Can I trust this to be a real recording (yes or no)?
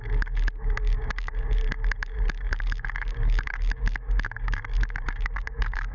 no